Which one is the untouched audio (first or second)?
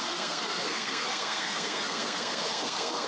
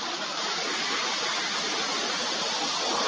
second